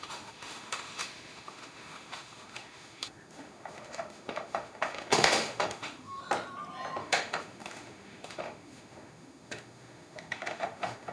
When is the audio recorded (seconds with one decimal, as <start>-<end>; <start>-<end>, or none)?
6.2-7.0